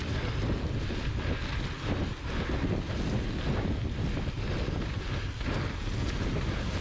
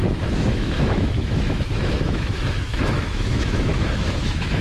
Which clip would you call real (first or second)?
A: first